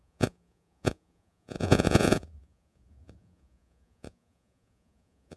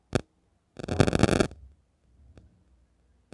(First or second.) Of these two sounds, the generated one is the first